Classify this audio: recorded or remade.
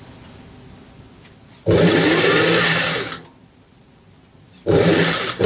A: recorded